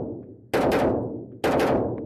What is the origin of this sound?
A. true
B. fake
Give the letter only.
A